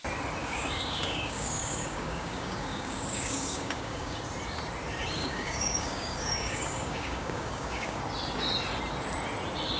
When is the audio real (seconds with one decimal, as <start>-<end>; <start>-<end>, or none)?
0.0-0.4; 4.2-5.2; 8.0-9.8